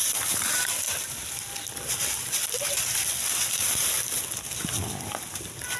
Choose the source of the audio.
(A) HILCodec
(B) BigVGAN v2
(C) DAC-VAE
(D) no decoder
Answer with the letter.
D